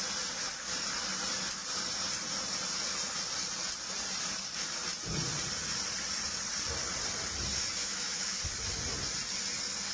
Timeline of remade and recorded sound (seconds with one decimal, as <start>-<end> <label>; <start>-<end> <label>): 0.0-7.8 recorded; 7.8-8.4 remade; 8.4-9.9 recorded